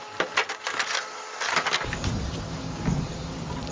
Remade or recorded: recorded